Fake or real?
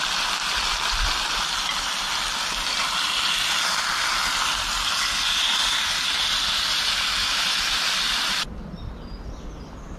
real